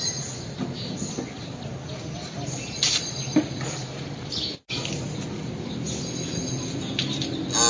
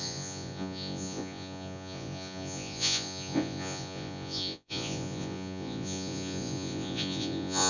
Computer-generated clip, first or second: second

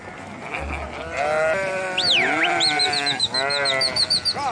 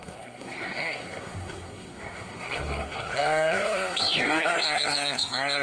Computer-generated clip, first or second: second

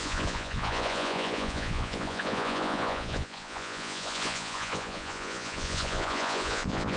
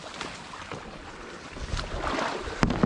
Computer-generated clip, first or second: first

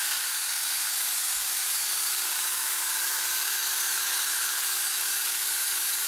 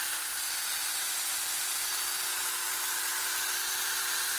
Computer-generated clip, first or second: first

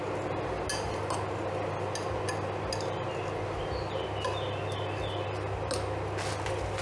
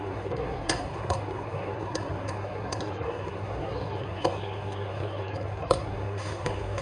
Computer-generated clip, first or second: second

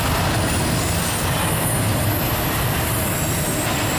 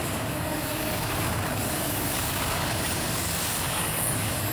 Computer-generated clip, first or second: second